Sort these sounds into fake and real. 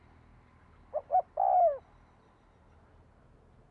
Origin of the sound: real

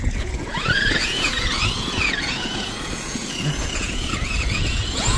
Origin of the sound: fake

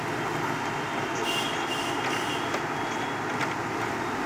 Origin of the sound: real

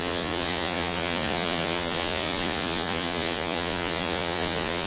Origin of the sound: fake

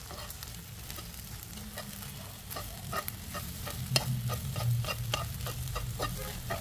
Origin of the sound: real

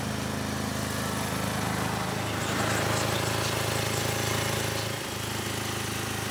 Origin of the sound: real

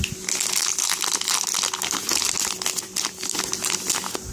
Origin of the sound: real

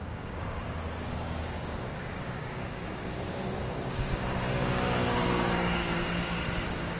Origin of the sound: fake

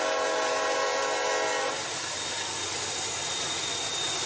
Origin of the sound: real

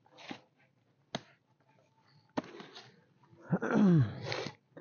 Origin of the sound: real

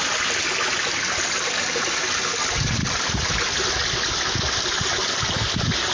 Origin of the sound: real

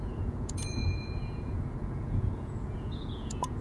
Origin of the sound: fake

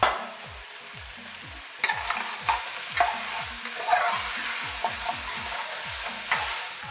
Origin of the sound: real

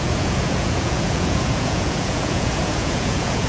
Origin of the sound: fake